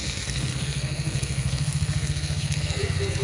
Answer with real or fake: fake